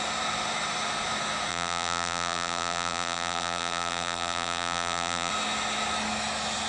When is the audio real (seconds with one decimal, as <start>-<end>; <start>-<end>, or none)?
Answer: 0.0-1.5; 5.3-6.7